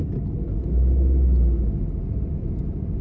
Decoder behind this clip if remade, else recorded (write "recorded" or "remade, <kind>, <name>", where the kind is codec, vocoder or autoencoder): recorded